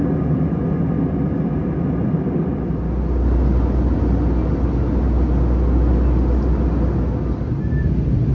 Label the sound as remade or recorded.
recorded